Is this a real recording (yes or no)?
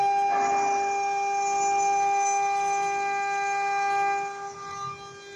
yes